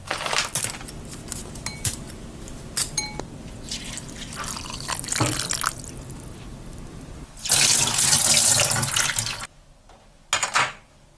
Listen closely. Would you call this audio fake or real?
real